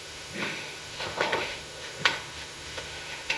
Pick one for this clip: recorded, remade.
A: remade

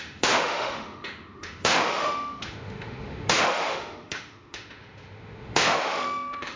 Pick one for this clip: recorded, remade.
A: remade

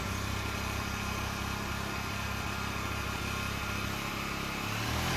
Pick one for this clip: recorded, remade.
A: recorded